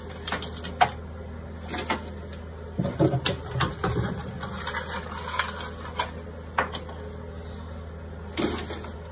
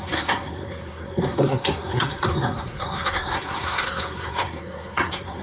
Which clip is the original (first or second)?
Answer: first